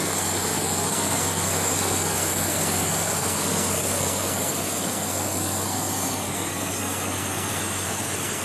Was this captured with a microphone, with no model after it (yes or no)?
no